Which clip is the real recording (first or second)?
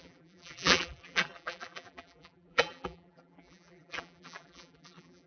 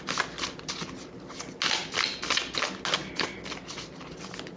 second